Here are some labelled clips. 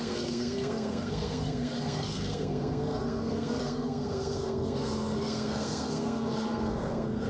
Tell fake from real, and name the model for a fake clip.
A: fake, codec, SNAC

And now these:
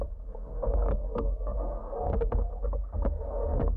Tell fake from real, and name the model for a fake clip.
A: fake, codec, SNAC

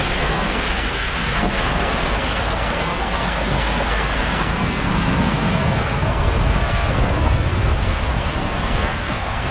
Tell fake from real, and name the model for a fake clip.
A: fake, codec, SNAC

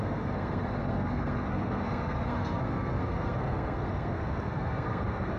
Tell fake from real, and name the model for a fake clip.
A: fake, codec, SNAC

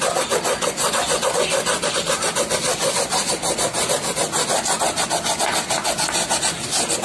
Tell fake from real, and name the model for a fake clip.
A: real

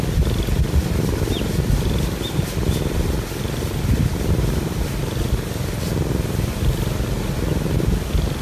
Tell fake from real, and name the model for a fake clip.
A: real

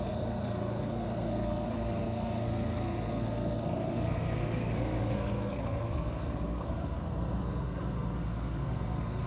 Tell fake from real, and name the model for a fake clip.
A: fake, codec, SNAC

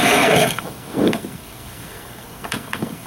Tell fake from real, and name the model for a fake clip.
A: fake, codec, SNAC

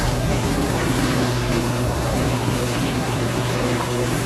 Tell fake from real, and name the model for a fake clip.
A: fake, codec, SNAC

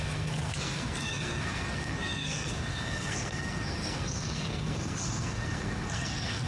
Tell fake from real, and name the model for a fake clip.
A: fake, codec, SNAC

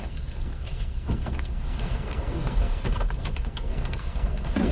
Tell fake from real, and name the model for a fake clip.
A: fake, codec, SNAC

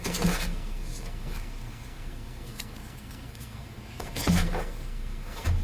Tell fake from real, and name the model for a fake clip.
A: fake, codec, SNAC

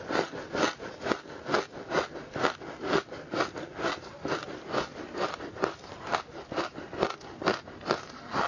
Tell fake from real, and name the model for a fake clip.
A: real